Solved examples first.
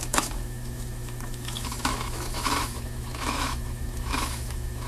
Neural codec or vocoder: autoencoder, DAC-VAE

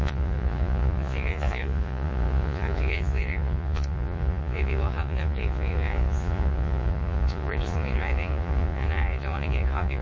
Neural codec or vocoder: vocoder, Vocos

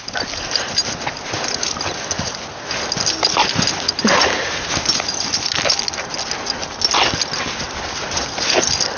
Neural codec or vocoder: none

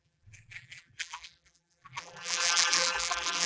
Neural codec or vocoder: vocoder, BigVGAN v2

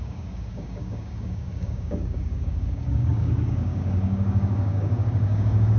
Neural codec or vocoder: codec, DAC